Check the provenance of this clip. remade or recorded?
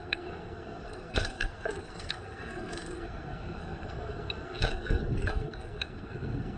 remade